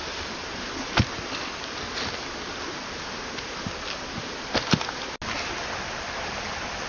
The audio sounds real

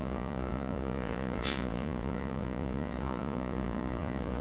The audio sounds fake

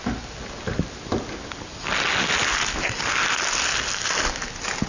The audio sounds real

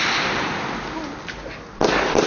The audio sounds real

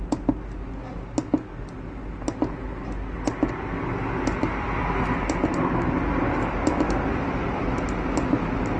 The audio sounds real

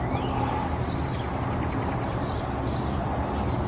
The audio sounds real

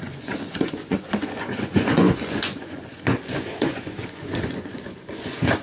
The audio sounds fake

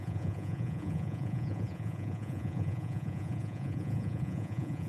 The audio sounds fake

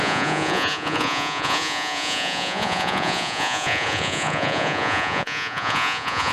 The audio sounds fake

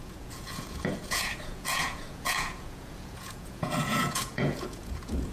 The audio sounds fake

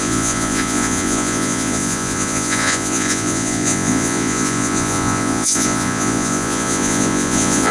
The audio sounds fake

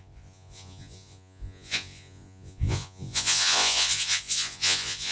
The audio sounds fake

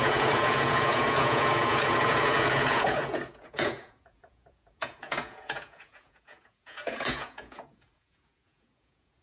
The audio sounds fake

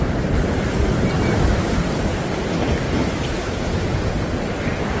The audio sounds real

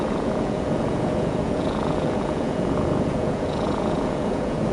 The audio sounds fake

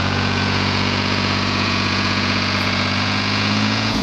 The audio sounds fake